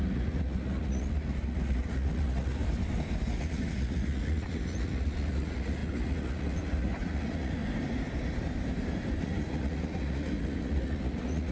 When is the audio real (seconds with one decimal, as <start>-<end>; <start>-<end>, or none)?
2.6-3.4; 7.6-9.2